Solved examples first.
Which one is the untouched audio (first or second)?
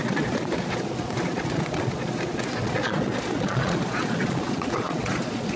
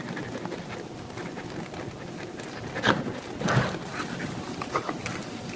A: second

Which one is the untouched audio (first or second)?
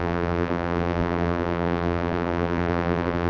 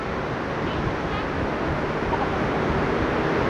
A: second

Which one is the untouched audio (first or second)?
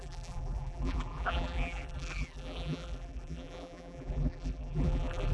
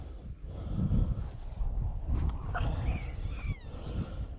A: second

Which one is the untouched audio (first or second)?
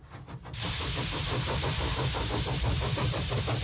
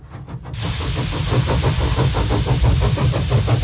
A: second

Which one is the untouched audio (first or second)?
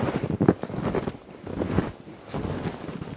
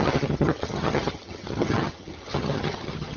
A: first